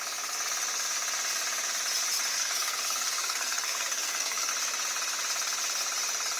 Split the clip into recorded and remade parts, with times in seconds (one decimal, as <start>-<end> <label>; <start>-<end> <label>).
0.0-2.3 recorded; 2.3-4.5 remade; 4.5-6.4 recorded